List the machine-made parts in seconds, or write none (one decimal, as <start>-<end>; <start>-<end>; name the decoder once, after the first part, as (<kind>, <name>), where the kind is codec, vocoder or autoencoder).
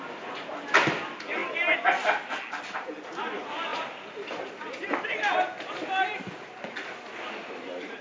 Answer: none